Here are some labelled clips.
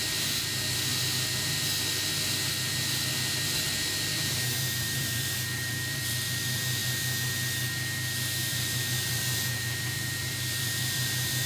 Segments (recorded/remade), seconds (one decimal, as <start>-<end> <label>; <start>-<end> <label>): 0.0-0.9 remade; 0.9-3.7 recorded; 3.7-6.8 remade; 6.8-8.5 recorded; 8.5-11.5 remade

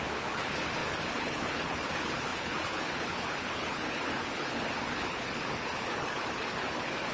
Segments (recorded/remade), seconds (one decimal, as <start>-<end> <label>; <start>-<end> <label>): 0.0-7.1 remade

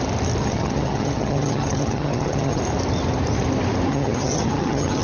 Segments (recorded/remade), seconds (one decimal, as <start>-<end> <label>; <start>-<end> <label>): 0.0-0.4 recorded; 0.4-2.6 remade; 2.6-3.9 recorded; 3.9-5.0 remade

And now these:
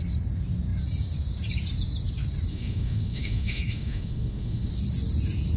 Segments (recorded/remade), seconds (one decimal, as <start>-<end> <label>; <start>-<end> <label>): 0.0-2.5 recorded; 2.5-4.7 remade; 4.7-5.6 recorded

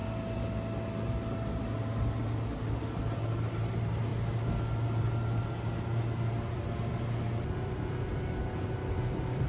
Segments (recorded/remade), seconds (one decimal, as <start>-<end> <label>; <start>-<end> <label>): 0.0-9.5 recorded